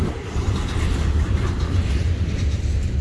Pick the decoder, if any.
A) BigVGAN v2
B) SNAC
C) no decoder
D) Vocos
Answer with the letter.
A